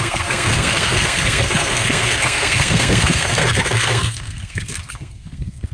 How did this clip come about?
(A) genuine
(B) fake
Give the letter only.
B